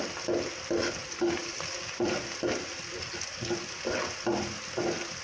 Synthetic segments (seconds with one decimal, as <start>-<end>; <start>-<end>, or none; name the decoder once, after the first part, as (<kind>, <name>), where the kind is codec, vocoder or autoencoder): none